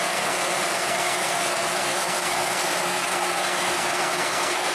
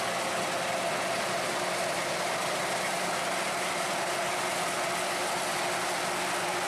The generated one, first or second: first